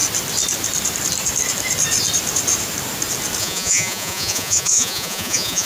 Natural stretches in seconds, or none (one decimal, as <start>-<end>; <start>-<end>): 0.0-3.4